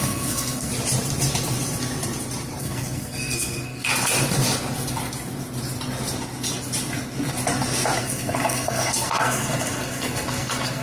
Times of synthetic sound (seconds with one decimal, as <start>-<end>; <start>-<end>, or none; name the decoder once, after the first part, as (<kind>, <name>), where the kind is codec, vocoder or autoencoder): 0.0-0.7 (codec, SNAC); 2.6-3.9; 8.0-10.8